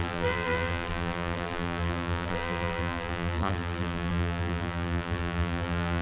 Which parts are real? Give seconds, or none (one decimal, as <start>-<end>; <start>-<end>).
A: none